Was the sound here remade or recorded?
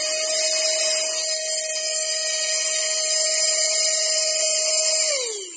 recorded